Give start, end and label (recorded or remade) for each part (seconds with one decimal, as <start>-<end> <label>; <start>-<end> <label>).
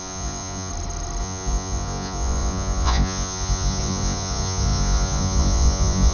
0.0-0.7 remade; 0.7-1.2 recorded; 1.2-6.1 remade